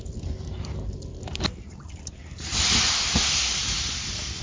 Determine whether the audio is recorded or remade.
recorded